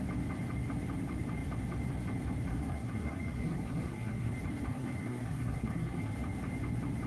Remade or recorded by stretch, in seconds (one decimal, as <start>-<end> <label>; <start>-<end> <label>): 0.0-2.5 recorded; 2.5-4.3 remade; 4.3-4.7 recorded; 4.7-6.1 remade; 6.1-7.1 recorded